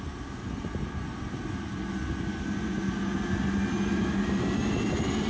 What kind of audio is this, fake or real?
real